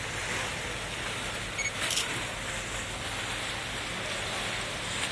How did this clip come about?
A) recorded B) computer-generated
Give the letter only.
A